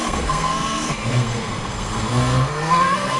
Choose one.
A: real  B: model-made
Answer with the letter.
B